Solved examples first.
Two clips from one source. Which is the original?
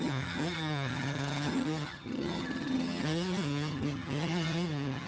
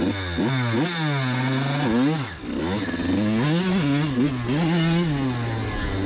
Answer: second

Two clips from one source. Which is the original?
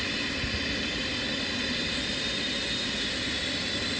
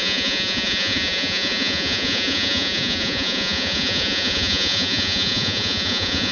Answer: first